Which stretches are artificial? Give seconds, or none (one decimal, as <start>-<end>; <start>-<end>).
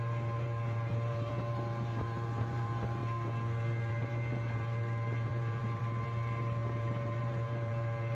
0.0-3.0; 3.9-8.1